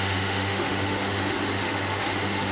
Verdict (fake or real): fake